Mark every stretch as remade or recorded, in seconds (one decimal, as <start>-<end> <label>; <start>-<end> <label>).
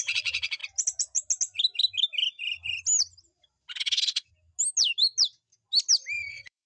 0.0-0.6 remade; 0.6-3.8 recorded; 3.8-4.3 remade; 4.3-6.3 recorded; 6.3-6.7 remade